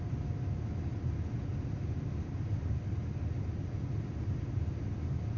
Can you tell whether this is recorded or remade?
recorded